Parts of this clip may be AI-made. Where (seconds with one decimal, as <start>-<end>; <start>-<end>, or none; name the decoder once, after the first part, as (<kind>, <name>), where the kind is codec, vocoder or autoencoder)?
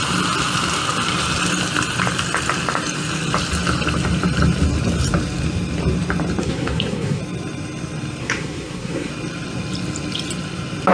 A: 6.4-7.2 (codec, SNAC); 8.2-9.1